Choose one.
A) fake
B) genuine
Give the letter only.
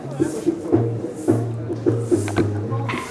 B